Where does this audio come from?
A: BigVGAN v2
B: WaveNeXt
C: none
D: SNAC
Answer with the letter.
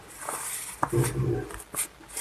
C